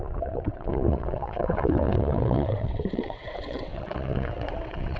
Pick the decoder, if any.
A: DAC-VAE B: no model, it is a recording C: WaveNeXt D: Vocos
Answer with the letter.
C